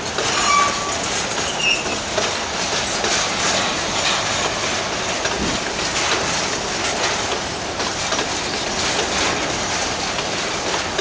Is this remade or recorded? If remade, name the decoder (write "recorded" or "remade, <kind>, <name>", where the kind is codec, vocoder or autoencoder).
recorded